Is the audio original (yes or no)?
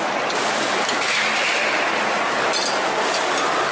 yes